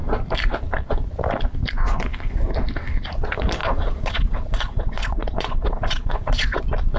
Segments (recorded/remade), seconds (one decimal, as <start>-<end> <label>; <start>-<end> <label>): 0.0-3.6 recorded; 3.6-6.6 remade; 6.6-7.0 recorded